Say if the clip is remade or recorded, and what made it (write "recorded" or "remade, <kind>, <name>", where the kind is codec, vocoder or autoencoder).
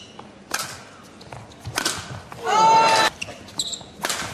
recorded